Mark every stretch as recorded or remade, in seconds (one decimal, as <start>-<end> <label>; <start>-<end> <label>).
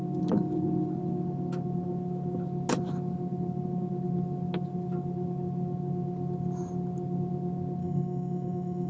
0.0-7.8 recorded; 7.8-8.9 remade